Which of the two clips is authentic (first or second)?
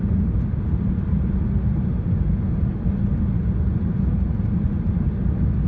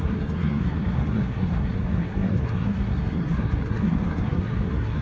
first